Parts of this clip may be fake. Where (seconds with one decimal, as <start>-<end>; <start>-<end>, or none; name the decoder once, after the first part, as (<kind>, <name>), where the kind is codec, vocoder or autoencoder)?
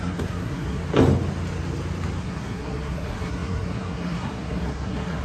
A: 0.0-0.8 (codec, SNAC); 2.2-5.2